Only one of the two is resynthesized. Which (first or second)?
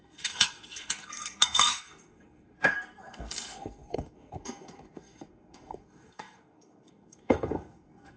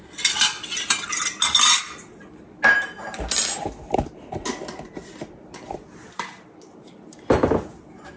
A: first